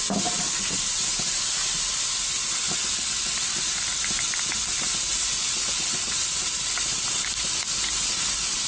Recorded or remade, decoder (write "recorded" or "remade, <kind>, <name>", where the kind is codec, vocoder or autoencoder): recorded